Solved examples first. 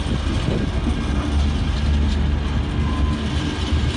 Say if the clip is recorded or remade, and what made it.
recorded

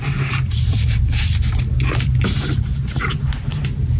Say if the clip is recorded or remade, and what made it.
remade, vocoder, BigVGAN v2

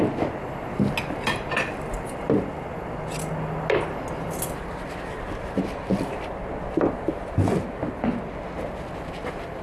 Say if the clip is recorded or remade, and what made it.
recorded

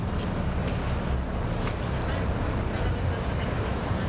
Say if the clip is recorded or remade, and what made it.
recorded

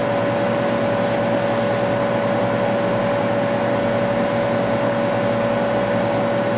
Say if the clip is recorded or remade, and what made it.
recorded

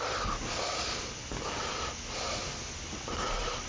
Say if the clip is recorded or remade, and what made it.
recorded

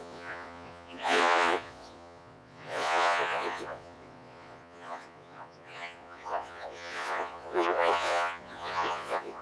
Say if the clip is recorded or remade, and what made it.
remade, vocoder, Vocos